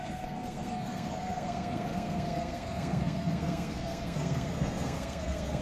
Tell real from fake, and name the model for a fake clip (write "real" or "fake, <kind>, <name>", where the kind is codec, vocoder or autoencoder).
fake, codec, SNAC